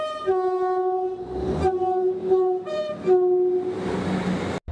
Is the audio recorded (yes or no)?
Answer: yes